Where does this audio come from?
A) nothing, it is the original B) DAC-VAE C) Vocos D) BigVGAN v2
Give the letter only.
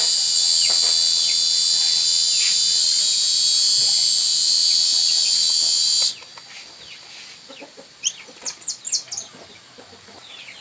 A